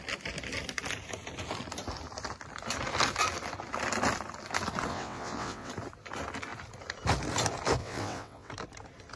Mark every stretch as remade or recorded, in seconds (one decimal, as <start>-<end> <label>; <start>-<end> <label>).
0.0-4.9 recorded; 4.9-5.7 remade; 5.7-7.8 recorded; 7.8-8.5 remade; 8.5-9.2 recorded